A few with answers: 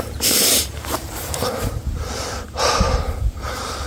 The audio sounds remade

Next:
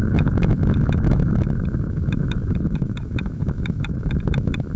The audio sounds remade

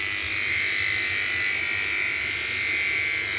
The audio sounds recorded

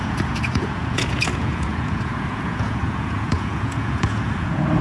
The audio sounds remade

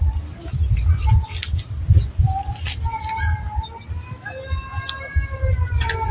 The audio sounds recorded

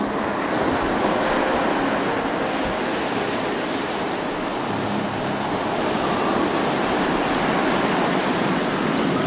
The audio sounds recorded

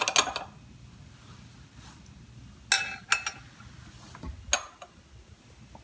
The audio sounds recorded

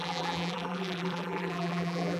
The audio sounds remade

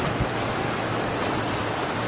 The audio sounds recorded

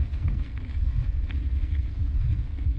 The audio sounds remade